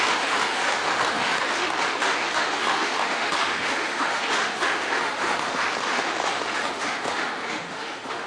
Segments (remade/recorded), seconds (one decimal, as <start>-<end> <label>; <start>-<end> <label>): 0.0-8.3 remade